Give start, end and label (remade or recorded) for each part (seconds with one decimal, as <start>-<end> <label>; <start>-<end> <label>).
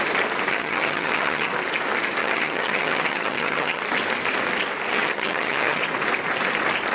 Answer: 0.0-0.5 recorded; 0.5-1.5 remade; 1.5-2.2 recorded; 2.2-3.8 remade; 3.8-4.9 recorded; 4.9-5.8 remade; 5.8-6.9 recorded